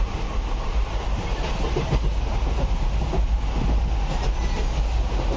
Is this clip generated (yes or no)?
no